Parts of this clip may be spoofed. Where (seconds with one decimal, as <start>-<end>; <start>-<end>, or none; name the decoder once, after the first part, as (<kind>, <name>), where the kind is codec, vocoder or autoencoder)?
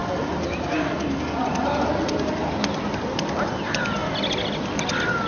none